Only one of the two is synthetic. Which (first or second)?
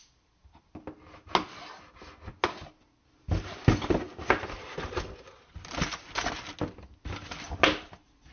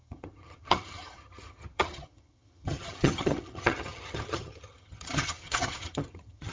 second